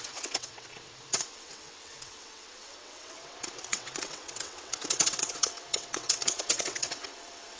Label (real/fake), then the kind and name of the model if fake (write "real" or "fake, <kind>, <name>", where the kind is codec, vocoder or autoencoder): fake, vocoder, WaveNeXt